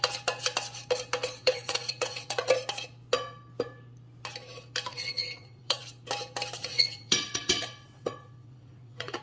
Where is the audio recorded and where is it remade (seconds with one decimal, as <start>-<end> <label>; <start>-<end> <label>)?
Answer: 0.0-1.4 recorded; 1.4-2.5 remade; 2.5-4.9 recorded; 4.9-5.8 remade; 5.8-6.6 recorded; 6.6-9.2 remade